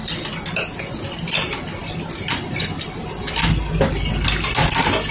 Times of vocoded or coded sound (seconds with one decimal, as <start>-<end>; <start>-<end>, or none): 0.0-0.8; 1.8-3.9